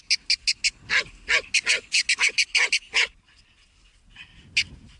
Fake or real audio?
real